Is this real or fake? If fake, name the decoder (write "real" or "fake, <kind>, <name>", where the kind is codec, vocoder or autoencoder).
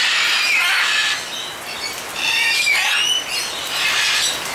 real